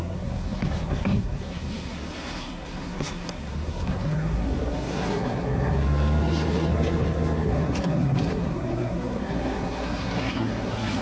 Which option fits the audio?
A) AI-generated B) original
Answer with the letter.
A